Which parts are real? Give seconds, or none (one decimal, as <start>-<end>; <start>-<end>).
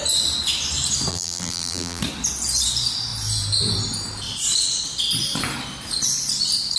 0.0-1.1; 2.0-6.8